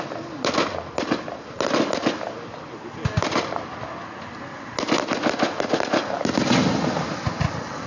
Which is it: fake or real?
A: real